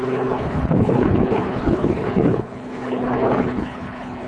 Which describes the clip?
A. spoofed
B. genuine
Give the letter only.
A